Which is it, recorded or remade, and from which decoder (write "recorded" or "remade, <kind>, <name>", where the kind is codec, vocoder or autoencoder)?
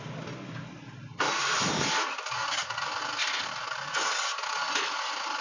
recorded